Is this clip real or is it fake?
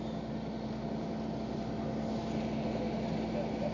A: real